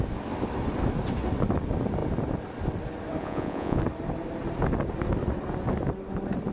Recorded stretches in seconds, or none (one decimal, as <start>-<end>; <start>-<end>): 0.0-3.2; 3.8-6.5